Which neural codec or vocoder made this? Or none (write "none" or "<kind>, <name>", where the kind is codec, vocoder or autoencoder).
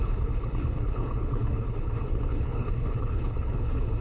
codec, HILCodec